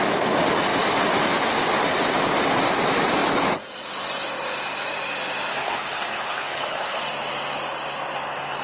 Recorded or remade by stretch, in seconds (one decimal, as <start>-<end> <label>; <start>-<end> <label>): 0.0-5.5 recorded; 5.5-7.0 remade; 7.0-8.6 recorded